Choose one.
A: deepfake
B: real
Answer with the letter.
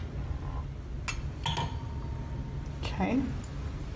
B